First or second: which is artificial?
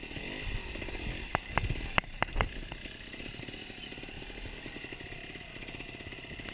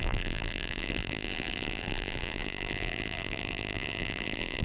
second